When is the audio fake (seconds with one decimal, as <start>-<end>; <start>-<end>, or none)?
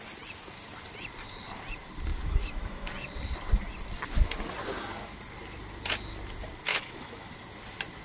2.1-2.9; 6.7-7.3